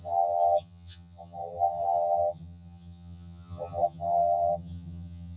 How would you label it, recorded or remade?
remade